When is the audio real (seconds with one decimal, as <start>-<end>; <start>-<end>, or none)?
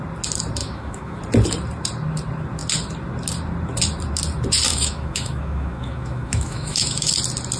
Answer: 0.0-0.6; 1.2-4.7; 7.1-7.6